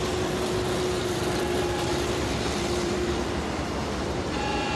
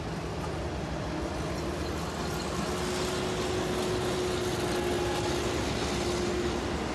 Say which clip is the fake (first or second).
first